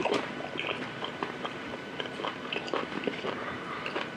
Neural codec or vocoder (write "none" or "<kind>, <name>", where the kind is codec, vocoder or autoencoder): vocoder, BigVGAN v2